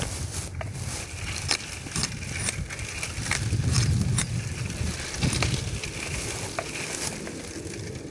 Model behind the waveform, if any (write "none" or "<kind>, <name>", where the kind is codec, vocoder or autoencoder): none